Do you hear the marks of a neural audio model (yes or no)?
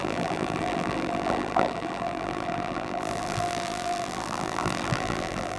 yes